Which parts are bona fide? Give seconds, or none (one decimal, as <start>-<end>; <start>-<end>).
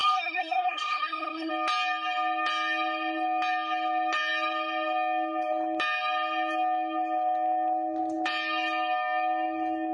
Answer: 1.5-9.9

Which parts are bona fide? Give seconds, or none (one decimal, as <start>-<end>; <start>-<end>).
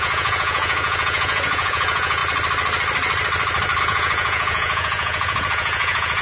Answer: 2.2-3.8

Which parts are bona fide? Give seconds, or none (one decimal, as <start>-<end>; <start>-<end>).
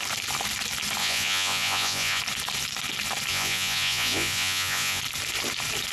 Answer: 0.0-1.0; 2.2-3.3; 5.0-5.9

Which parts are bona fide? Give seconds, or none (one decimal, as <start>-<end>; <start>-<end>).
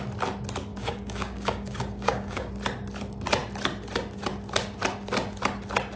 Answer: 0.0-0.7; 2.5-6.0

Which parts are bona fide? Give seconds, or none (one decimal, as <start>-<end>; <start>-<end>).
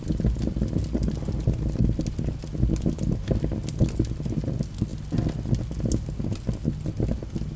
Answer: 0.0-7.6